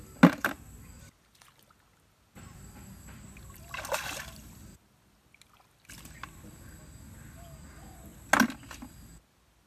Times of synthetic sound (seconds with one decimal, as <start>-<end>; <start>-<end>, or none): none